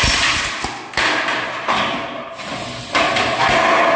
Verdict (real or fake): real